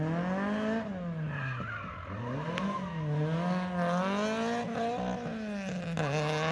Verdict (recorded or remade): recorded